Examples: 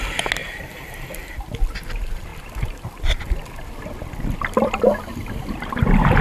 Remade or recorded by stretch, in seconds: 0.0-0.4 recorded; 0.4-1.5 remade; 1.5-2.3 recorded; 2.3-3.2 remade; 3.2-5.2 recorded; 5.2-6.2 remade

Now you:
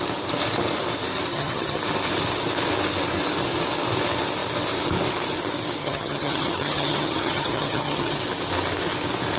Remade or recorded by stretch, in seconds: 0.0-1.3 recorded; 1.3-1.8 remade; 1.8-5.8 recorded; 5.8-8.2 remade; 8.2-9.4 recorded

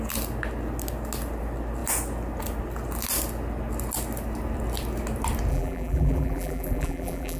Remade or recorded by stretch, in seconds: 0.0-5.5 recorded; 5.5-7.4 remade

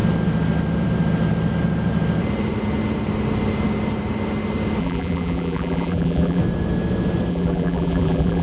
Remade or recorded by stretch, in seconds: 0.0-4.8 recorded; 4.8-6.4 remade; 6.4-7.3 recorded; 7.3-8.4 remade

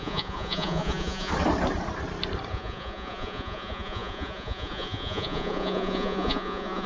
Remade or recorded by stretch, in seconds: 0.0-1.3 remade; 1.3-2.5 recorded; 2.5-6.9 remade

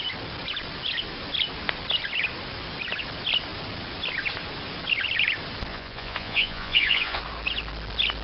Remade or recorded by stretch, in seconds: 0.0-5.7 recorded; 5.7-7.2 remade; 7.2-8.2 recorded

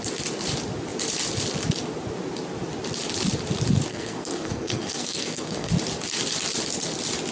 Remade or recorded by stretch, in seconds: 0.0-3.9 recorded; 3.9-5.7 remade; 5.7-7.3 recorded

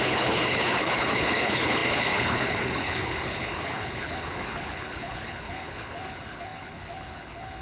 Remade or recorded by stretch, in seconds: 0.0-7.6 remade